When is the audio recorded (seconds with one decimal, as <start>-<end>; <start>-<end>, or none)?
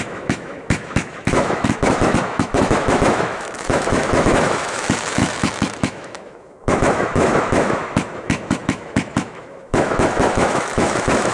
none